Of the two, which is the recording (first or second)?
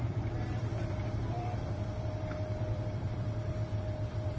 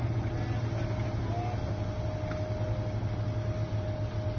second